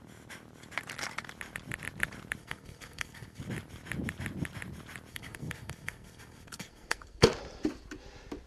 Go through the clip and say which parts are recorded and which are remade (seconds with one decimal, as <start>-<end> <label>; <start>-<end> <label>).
0.0-2.4 recorded; 2.4-3.4 remade; 3.4-5.1 recorded; 5.1-7.2 remade; 7.2-8.5 recorded